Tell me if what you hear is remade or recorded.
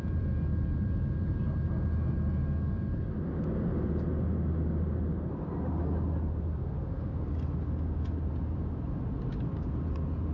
recorded